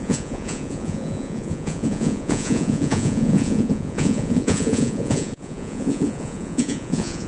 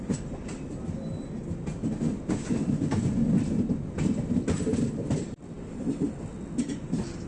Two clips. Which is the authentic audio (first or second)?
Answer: second